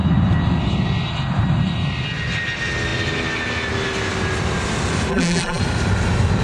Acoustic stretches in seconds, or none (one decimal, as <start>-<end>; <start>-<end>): 0.0-5.1; 5.6-6.4